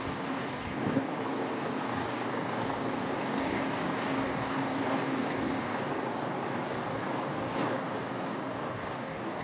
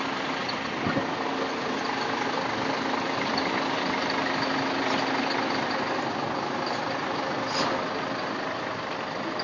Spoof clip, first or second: first